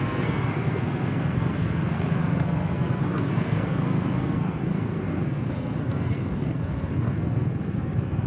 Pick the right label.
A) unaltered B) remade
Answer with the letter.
B